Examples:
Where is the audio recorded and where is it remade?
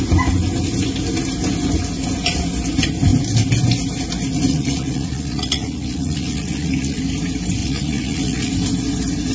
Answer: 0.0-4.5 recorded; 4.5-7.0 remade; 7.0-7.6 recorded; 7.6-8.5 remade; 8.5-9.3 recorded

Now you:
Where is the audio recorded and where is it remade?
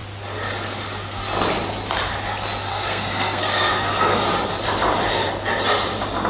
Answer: 0.0-2.7 recorded; 2.7-4.2 remade; 4.2-6.3 recorded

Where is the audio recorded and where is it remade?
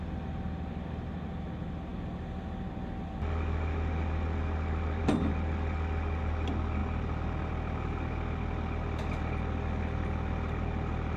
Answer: 0.0-11.2 recorded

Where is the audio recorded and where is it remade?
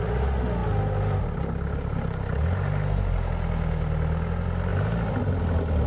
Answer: 0.0-5.9 recorded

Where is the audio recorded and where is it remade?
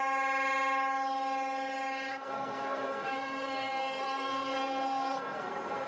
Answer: 0.0-2.1 recorded; 2.1-5.9 remade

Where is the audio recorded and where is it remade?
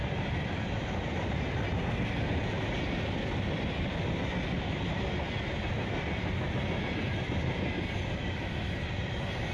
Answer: 0.0-1.4 remade; 1.4-9.5 recorded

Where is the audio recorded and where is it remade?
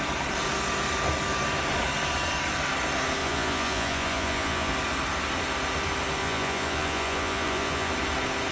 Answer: 0.0-3.2 recorded; 3.2-4.7 remade; 4.7-6.2 recorded; 6.2-7.9 remade; 7.9-8.5 recorded